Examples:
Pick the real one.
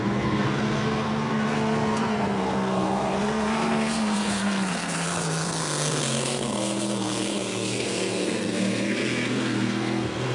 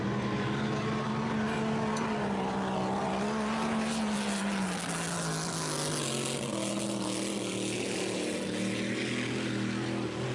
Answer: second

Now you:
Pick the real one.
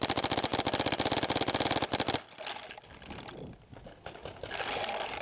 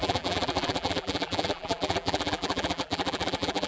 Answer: first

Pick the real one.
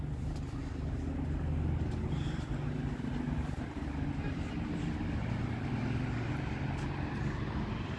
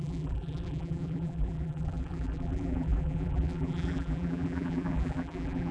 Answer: first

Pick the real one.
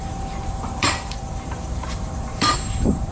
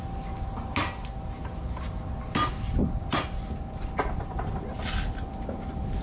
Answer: second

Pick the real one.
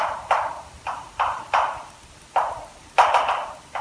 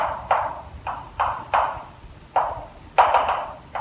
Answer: second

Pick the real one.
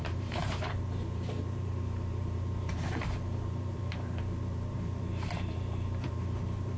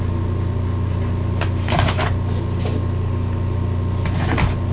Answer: second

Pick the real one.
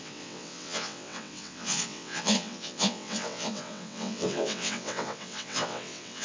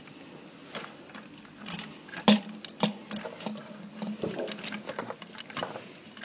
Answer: second